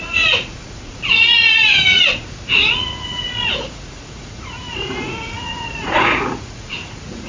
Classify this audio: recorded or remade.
remade